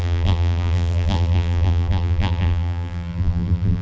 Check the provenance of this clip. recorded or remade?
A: remade